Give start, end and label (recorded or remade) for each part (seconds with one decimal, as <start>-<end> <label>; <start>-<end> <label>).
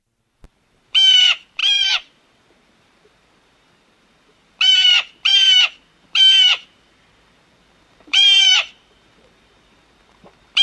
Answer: 0.0-5.3 remade; 5.3-6.0 recorded; 6.0-10.6 remade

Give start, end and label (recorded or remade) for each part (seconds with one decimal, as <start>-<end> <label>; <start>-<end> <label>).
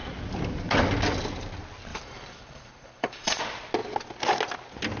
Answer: 0.0-1.9 recorded; 1.9-3.4 remade; 3.4-5.0 recorded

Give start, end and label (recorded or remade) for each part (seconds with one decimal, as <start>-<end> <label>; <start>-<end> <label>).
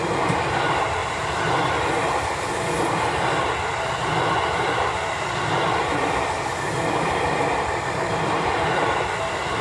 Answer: 0.0-1.0 recorded; 1.0-1.7 remade; 1.7-9.6 recorded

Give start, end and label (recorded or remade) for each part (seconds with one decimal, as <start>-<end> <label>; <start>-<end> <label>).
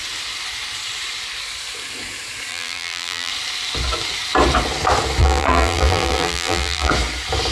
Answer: 0.0-2.5 recorded; 2.5-3.3 remade; 3.3-5.2 recorded; 5.2-6.9 remade; 6.9-7.5 recorded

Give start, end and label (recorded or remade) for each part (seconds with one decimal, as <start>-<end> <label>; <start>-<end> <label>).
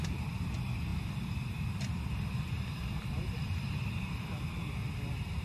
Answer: 0.0-0.9 recorded; 0.9-4.1 remade; 4.1-5.4 recorded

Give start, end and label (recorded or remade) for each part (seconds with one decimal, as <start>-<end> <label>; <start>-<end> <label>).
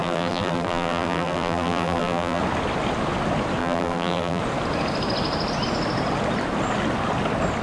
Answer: 0.0-2.4 remade; 2.4-3.6 recorded; 3.6-4.4 remade; 4.4-7.6 recorded